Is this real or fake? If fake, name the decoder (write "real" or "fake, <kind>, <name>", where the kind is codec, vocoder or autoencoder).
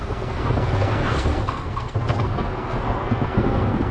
fake, codec, SNAC